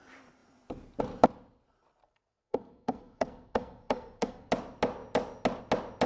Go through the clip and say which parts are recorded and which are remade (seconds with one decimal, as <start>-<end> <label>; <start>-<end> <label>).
0.0-2.0 recorded; 2.0-4.5 remade; 4.5-6.1 recorded